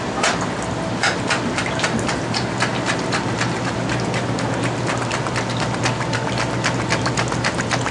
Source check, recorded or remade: recorded